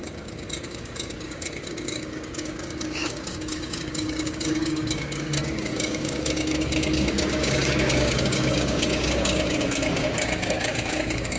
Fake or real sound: fake